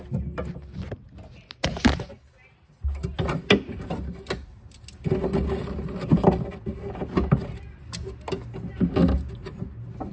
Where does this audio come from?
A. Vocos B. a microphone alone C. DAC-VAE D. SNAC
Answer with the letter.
B